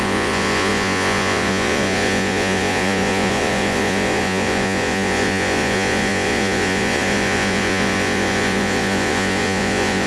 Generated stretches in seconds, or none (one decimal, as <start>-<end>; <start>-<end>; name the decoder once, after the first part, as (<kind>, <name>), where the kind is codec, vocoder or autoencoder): 0.0-10.1 (vocoder, Vocos)